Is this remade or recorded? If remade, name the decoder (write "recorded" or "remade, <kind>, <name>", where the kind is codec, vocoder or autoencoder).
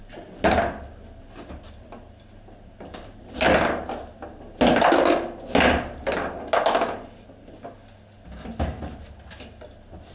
recorded